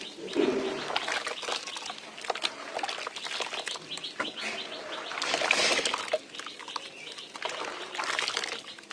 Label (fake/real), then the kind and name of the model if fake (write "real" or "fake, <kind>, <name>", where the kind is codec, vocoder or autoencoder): real